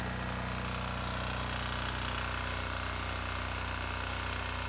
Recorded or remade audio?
recorded